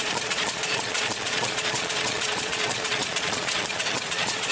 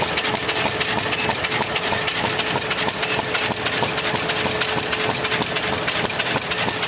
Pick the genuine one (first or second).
second